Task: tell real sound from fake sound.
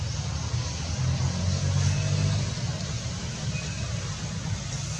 real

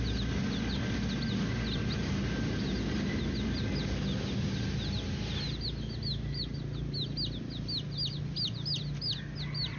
real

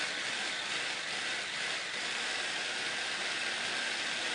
real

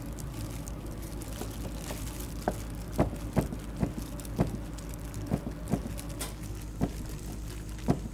real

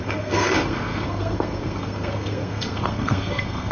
fake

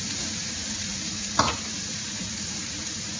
fake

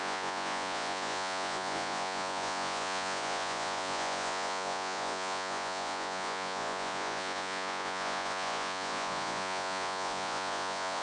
fake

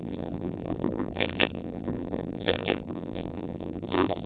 fake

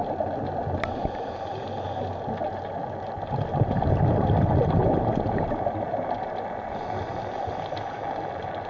real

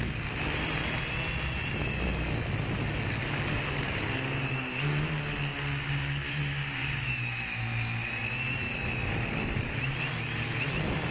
real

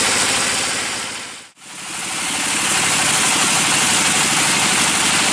real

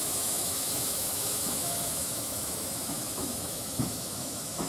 fake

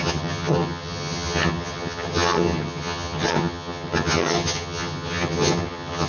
fake